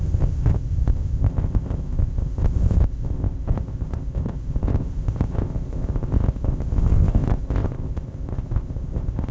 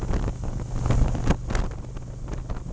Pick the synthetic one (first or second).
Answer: first